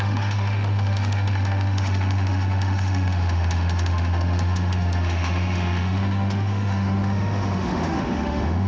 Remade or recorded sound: remade